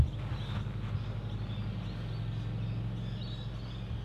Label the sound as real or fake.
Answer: real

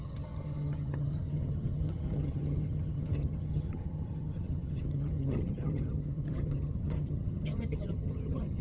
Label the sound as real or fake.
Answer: fake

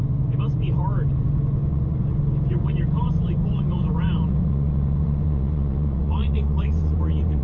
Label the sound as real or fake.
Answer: fake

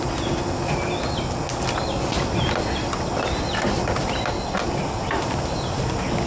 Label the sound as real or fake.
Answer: real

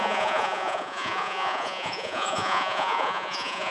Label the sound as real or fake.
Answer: fake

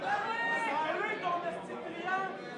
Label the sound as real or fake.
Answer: real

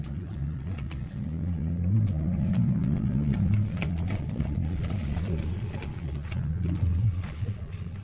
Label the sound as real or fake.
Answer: fake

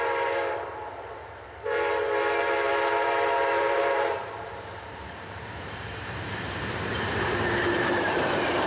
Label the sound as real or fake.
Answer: fake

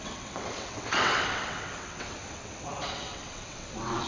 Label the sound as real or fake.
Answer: fake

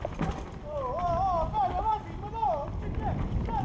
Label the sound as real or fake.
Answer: real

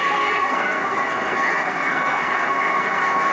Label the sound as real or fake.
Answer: fake